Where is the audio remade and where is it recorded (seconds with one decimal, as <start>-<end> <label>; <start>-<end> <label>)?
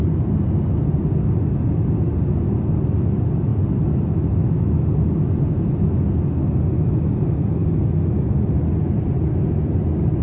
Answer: 0.0-10.2 recorded